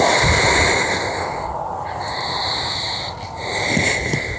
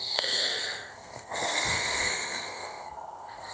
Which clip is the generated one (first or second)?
second